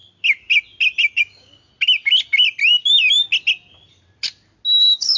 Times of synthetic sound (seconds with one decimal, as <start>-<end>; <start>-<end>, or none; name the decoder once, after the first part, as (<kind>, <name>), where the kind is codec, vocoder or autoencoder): 1.2-1.7 (codec, DAC); 4.8-5.2